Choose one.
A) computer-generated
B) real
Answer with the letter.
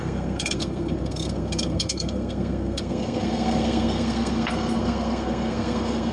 A